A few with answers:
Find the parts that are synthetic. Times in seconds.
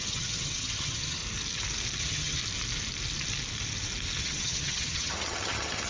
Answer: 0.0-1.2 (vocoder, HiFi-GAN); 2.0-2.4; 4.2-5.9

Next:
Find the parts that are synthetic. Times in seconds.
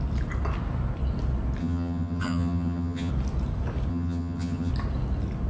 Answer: 1.6-3.1 (vocoder, HiFi-GAN); 3.9-4.7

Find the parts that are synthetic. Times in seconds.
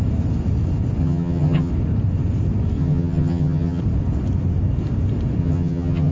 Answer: 1.0-1.7 (vocoder, HiFi-GAN); 2.8-3.8; 5.4-6.1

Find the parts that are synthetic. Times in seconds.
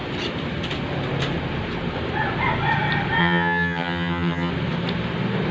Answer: 3.2-4.5 (vocoder, HiFi-GAN)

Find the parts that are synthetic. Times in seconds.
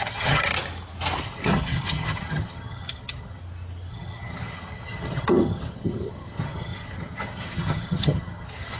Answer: 0.0-0.5 (vocoder, HiFi-GAN); 1.2-3.4; 3.9-8.8